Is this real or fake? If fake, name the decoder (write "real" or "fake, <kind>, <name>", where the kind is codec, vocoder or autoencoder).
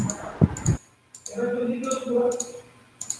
real